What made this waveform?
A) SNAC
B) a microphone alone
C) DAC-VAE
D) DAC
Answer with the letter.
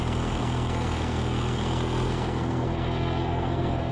A